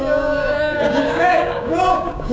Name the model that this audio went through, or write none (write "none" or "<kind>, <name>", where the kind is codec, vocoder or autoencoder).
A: codec, DAC